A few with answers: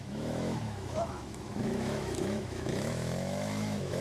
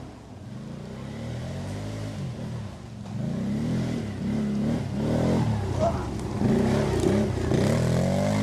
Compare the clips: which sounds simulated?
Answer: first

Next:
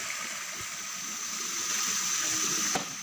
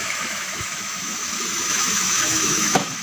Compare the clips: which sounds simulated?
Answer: second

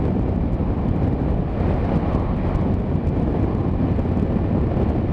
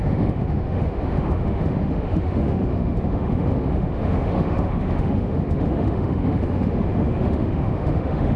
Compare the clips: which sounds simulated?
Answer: second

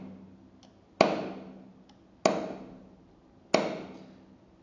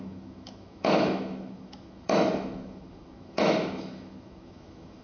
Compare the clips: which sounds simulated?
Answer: second